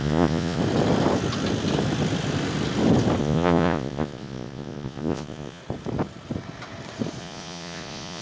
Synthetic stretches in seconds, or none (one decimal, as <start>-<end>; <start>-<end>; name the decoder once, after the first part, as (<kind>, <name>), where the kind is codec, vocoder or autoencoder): 0.0-0.6 (vocoder, Vocos); 3.2-5.6; 7.2-8.2